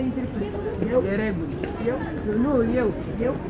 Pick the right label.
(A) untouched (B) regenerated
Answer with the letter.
A